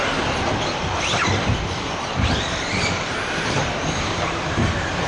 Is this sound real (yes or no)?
no